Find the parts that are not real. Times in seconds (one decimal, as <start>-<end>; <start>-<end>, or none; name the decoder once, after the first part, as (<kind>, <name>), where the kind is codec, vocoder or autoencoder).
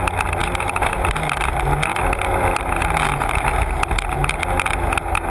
0.4-1.5 (vocoder, BigVGAN v2); 1.9-2.6